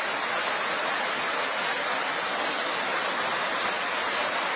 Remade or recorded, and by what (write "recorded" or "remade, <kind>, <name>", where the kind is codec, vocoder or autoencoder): recorded